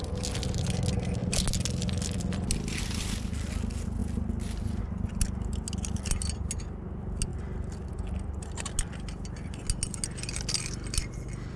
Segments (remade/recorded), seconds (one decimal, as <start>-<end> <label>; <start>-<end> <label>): 0.0-11.6 recorded